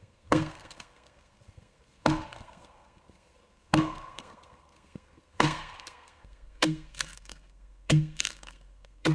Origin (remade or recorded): remade